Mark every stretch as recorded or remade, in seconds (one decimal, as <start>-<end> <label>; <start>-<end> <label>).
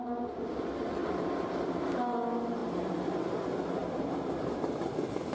0.0-1.0 recorded; 1.0-1.8 remade; 1.8-2.6 recorded; 2.6-3.4 remade; 3.4-3.8 recorded; 3.8-5.3 remade